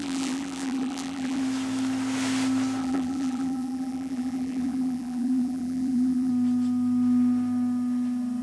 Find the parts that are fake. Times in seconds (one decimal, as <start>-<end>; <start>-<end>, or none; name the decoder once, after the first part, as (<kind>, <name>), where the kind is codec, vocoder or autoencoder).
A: 0.0-1.4 (vocoder, BigVGAN v2); 2.8-6.3